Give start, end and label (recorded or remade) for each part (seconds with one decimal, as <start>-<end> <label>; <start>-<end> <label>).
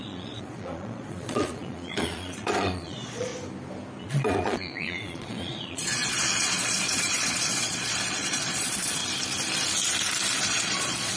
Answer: 0.0-3.3 remade; 3.3-4.0 recorded; 4.0-9.0 remade; 9.0-10.4 recorded; 10.4-11.2 remade